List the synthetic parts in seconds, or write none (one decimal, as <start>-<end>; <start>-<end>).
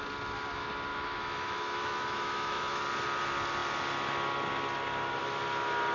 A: 0.9-2.8